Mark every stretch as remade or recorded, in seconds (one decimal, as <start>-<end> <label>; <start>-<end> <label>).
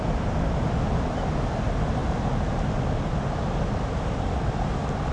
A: 0.0-5.1 recorded